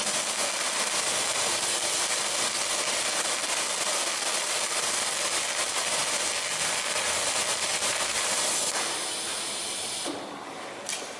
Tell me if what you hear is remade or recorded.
recorded